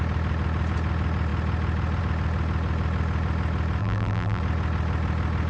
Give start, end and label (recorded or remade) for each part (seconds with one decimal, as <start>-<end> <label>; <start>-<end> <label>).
0.0-3.8 recorded; 3.8-4.4 remade; 4.4-5.5 recorded